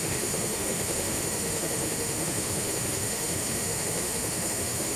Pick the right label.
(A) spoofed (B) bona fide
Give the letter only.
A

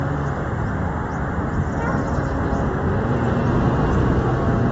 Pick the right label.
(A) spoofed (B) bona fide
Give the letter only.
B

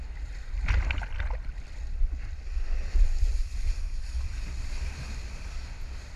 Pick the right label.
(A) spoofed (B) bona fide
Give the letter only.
B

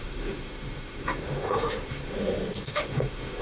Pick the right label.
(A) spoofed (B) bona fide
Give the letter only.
A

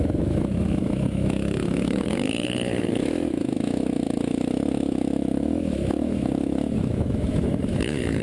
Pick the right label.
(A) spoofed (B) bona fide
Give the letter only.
A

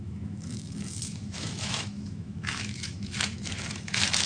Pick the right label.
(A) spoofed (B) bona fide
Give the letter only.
A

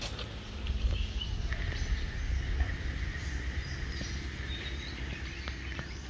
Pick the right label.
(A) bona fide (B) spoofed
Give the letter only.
A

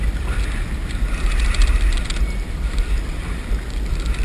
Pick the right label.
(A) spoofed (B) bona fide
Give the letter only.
B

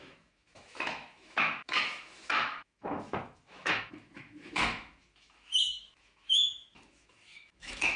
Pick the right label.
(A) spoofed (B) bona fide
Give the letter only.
A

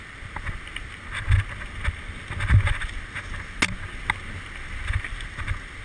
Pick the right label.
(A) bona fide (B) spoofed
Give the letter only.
A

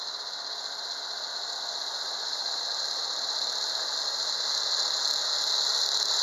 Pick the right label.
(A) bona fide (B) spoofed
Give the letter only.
A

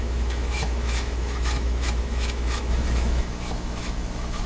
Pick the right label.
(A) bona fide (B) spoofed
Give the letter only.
B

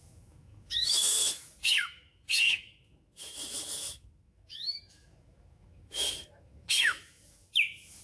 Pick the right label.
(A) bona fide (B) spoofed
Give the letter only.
B